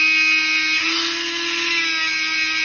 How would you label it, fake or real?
real